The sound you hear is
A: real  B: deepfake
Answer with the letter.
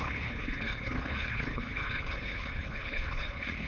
B